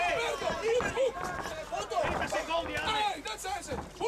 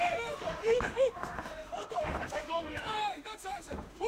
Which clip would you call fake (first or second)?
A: second